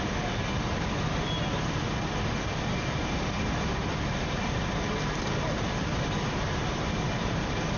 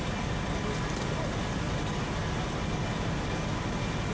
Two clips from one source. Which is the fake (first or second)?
first